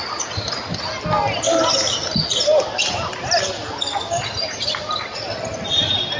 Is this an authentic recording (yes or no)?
yes